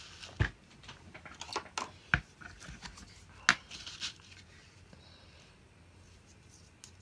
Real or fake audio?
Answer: real